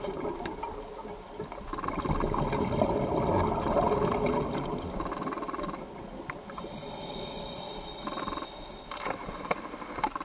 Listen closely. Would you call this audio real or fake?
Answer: real